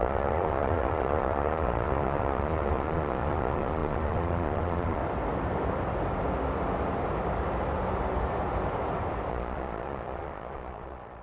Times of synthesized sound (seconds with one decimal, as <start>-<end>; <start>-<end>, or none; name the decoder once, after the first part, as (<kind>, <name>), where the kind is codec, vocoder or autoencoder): 0.0-5.0 (vocoder, Vocos); 9.3-11.2